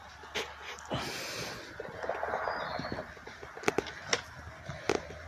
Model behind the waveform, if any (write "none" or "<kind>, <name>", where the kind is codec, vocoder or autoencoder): none